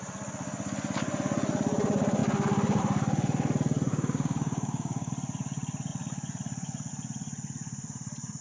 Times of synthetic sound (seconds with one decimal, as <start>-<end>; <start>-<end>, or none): 3.9-5.1